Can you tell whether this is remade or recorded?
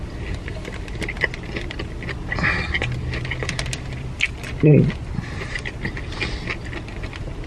recorded